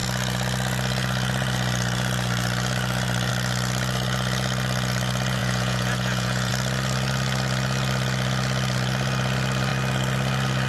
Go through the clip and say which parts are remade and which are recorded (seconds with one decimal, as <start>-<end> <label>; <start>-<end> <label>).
0.0-5.4 recorded; 5.4-6.5 remade; 6.5-10.7 recorded